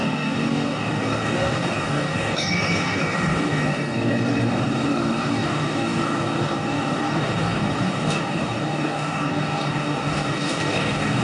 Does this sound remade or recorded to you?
remade